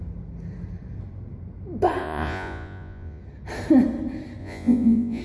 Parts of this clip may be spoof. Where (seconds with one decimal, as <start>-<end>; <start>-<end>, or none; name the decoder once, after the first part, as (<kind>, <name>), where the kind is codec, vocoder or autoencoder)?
2.0-3.2 (vocoder, Vocos); 4.4-5.2

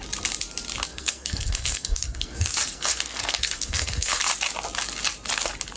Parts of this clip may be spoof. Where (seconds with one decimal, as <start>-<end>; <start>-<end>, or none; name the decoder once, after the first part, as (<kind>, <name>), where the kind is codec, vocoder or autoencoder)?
0.9-4.2 (codec, SNAC)

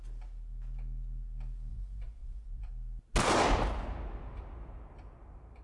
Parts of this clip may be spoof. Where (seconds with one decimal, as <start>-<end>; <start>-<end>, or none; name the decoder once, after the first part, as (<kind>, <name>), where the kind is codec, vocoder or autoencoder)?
1.7-2.7 (vocoder, Vocos)

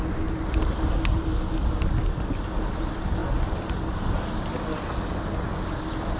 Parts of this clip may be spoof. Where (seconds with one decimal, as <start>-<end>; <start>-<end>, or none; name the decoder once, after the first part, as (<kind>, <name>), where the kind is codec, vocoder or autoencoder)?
none